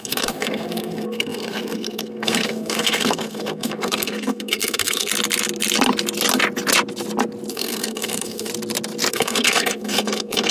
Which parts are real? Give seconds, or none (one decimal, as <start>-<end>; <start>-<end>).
5.1-7.5; 8.5-9.1